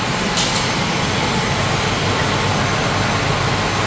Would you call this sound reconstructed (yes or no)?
no